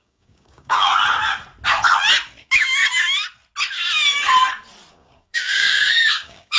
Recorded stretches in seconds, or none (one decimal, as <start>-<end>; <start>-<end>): 0.9-2.4; 2.8-4.9